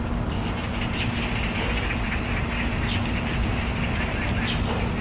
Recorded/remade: recorded